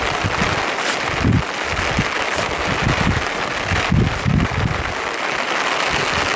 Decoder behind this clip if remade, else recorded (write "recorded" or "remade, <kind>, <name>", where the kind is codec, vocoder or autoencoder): recorded